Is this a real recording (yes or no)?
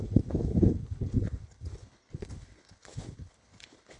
no